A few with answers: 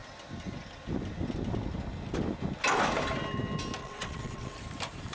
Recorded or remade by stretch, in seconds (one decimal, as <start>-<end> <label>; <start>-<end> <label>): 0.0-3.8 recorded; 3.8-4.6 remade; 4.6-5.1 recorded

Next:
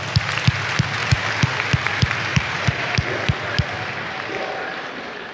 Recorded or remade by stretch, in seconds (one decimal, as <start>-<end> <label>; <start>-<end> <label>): 0.0-2.3 recorded; 2.3-2.9 remade; 2.9-5.3 recorded

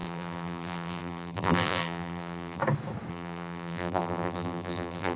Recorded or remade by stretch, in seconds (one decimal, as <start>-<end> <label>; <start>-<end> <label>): 0.0-2.6 remade; 2.6-3.1 recorded; 3.1-5.2 remade

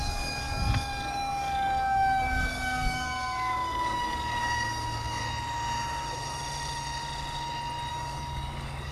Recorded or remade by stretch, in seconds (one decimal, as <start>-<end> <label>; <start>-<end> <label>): 0.0-5.2 remade; 5.2-7.9 recorded; 7.9-8.9 remade